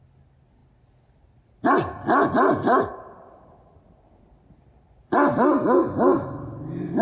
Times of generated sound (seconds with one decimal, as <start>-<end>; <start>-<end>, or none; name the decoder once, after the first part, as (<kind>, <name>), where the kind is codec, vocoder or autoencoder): none